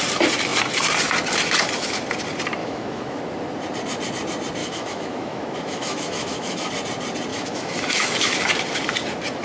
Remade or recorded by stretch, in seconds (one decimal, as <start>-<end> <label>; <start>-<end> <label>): 0.0-2.6 recorded; 2.6-3.2 remade; 3.2-4.6 recorded; 4.6-6.7 remade; 6.7-7.3 recorded; 7.3-8.5 remade; 8.5-9.4 recorded

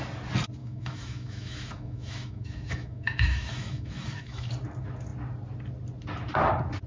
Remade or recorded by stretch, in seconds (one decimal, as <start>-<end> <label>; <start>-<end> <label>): 0.0-0.6 recorded; 0.6-4.5 remade; 4.5-6.9 recorded

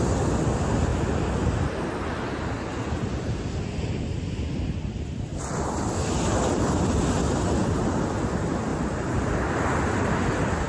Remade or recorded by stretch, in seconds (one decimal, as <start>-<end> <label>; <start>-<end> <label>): 0.0-6.3 recorded; 6.3-7.6 remade; 7.6-10.7 recorded

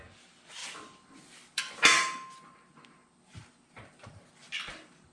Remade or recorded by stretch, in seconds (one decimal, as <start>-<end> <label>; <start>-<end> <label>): 0.0-0.6 recorded; 0.6-1.6 remade; 1.6-3.0 recorded; 3.0-5.1 remade

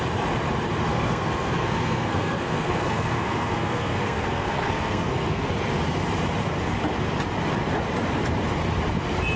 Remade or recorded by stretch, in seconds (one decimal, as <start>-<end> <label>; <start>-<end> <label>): 0.0-0.9 recorded; 0.9-5.4 remade; 5.4-9.4 recorded

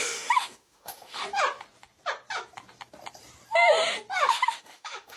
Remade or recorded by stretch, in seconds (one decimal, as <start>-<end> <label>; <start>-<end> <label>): 0.0-1.2 remade; 1.2-4.3 recorded; 4.3-5.2 remade

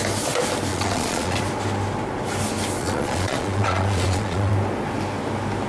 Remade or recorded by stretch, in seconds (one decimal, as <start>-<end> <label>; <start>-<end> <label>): 0.0-0.7 recorded; 0.7-1.4 remade; 1.4-2.8 recorded; 2.8-4.5 remade; 4.5-5.7 recorded

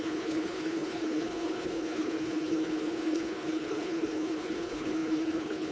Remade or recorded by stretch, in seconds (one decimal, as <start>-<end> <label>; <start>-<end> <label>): 0.0-5.7 remade